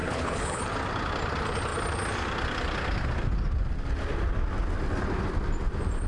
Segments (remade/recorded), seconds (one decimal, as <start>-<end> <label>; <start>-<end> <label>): 0.0-0.6 remade; 0.6-6.1 recorded